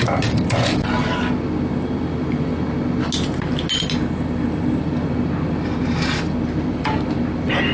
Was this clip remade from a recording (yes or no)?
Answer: no